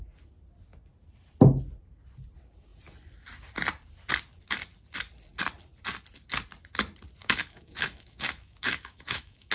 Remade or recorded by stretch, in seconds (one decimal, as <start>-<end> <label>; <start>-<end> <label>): 0.0-7.2 recorded; 7.2-9.5 remade